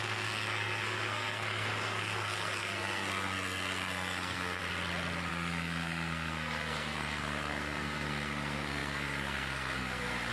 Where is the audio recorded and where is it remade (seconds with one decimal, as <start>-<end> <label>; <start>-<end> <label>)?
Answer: 0.0-4.6 remade; 4.6-5.3 recorded; 5.3-10.3 remade